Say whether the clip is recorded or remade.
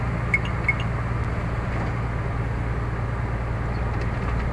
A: recorded